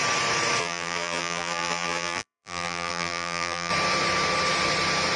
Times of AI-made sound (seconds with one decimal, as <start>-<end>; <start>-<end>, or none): 0.6-3.7

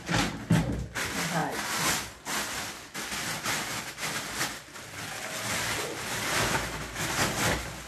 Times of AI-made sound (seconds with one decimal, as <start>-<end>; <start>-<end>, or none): none

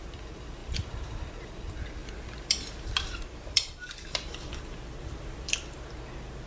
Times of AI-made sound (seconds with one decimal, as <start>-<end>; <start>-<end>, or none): 0.6-1.2; 2.0-5.9

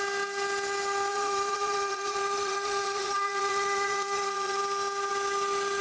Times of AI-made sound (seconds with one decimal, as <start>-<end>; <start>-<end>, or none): 1.1-4.6

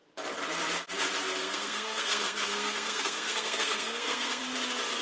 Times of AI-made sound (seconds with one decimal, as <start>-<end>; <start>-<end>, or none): 1.4-4.4